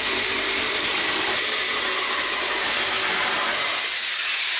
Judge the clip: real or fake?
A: fake